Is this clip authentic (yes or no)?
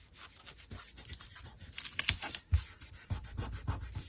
yes